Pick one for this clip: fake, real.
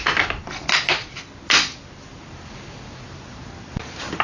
real